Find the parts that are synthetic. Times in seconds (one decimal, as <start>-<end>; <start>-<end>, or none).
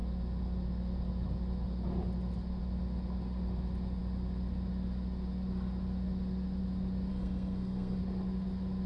7.1-8.0